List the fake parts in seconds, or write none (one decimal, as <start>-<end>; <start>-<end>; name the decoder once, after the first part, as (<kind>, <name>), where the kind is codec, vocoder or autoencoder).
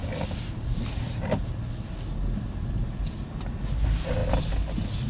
none